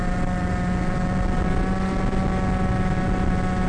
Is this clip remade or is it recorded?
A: recorded